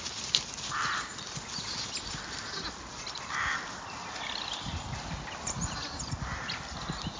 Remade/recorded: recorded